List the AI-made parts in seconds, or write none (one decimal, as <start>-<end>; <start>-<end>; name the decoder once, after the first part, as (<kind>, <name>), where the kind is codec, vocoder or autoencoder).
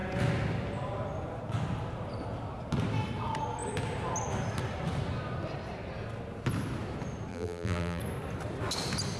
7.3-8.0 (vocoder, BigVGAN v2)